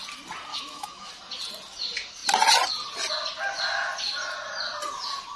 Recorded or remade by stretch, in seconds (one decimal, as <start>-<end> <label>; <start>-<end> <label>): 0.0-0.5 recorded; 0.5-1.1 remade; 1.1-5.4 recorded